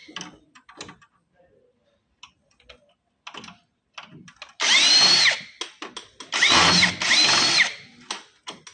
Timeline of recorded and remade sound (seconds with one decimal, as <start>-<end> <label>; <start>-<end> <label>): 0.0-8.7 recorded